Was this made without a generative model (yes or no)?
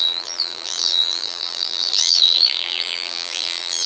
no